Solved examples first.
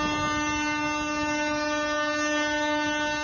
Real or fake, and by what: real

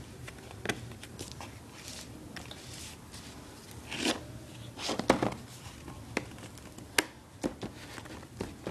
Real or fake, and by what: real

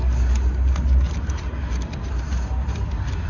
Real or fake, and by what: real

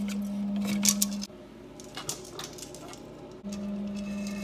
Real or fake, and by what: real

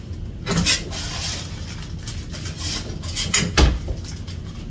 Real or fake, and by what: real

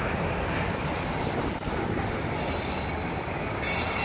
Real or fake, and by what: real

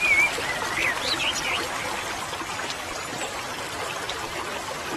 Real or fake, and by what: real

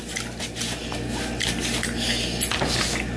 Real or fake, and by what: real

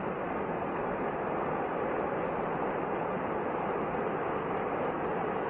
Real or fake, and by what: real